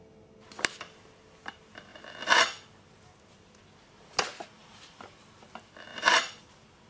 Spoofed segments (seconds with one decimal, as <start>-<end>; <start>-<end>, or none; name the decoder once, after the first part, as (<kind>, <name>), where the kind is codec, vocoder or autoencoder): 5.9-6.4 (vocoder, BigVGAN v2)